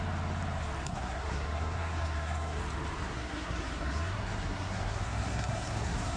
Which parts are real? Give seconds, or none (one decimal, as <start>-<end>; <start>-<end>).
0.0-0.8; 2.6-3.0